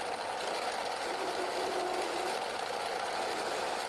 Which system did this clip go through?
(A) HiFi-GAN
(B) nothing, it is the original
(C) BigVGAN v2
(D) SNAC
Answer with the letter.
B